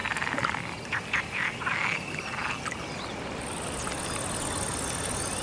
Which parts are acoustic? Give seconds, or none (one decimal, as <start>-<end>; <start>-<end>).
0.0-5.4